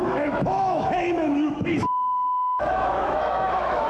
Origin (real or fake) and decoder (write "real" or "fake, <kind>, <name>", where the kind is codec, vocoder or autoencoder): fake, autoencoder, DAC-VAE